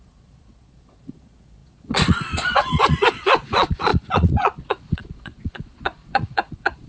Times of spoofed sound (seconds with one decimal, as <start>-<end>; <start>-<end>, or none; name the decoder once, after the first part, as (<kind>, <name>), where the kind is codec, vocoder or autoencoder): 0.0-6.9 (vocoder, Vocos)